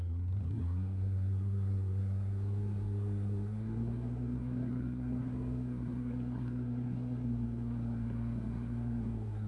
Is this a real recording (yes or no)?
no